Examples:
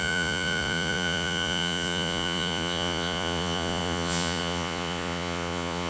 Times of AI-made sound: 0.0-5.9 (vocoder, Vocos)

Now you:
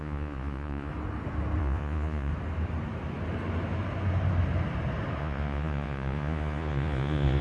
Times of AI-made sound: 0.0-0.9 (vocoder, Vocos); 1.6-2.3; 5.2-7.4

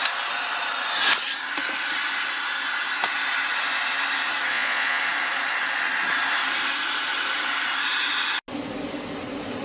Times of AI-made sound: 4.5-5.0 (vocoder, Vocos)

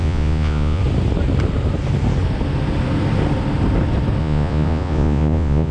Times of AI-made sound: 0.0-0.8 (vocoder, Vocos); 4.2-5.7